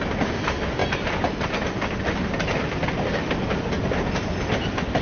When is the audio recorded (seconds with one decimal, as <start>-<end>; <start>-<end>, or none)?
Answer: 0.0-5.0